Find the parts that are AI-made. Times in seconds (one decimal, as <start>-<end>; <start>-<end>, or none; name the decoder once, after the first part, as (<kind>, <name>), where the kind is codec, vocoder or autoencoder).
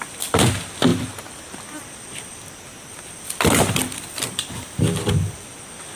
none